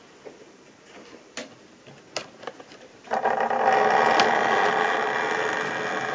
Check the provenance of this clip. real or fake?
real